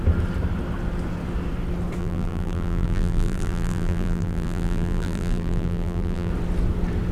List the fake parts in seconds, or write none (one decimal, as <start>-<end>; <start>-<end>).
2.0-6.3